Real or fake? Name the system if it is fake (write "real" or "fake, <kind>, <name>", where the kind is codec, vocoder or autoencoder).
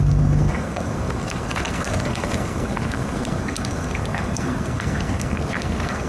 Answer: fake, codec, SNAC